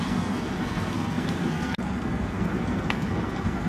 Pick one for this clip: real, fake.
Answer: fake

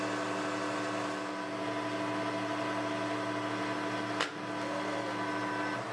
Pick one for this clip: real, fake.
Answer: real